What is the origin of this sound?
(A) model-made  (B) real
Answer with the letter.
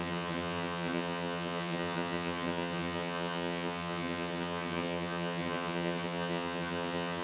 A